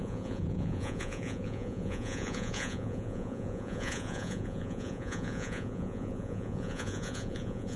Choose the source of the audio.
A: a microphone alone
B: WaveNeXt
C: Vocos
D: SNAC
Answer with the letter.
C